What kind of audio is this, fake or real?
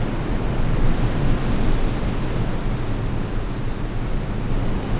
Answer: real